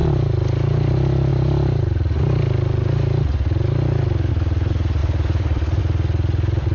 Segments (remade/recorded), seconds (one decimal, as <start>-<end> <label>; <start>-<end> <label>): 0.0-5.0 recorded; 5.0-5.8 remade; 5.8-6.7 recorded